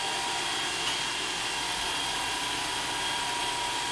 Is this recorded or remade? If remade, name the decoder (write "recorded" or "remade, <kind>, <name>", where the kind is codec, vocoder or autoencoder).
recorded